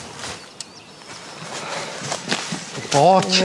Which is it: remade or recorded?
recorded